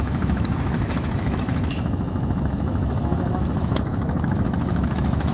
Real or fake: fake